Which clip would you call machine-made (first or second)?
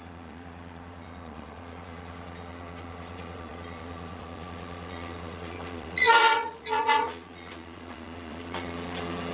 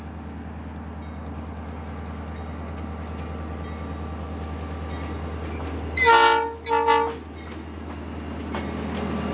first